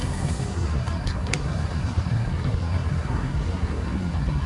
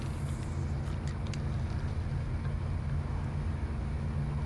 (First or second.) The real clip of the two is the second